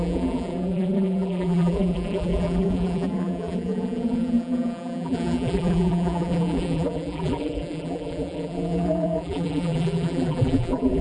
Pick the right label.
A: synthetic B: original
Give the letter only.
A